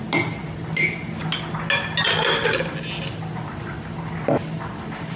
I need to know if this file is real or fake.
real